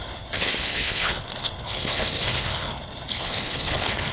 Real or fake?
fake